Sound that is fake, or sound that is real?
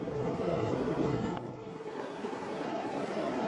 fake